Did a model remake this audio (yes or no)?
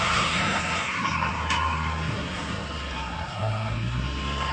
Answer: yes